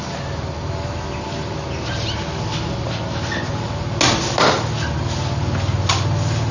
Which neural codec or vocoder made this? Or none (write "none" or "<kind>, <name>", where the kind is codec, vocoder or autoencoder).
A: none